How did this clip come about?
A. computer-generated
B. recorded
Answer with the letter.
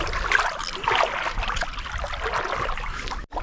B